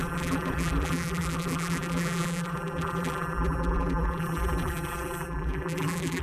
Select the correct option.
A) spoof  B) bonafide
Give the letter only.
A